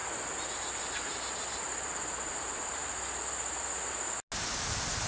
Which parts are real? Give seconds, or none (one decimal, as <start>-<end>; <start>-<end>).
0.0-5.1